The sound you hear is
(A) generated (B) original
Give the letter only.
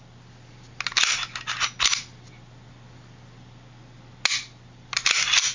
B